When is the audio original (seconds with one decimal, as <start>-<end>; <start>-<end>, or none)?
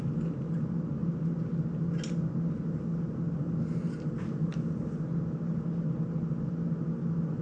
0.0-7.4